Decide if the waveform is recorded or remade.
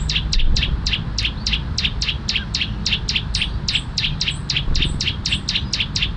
recorded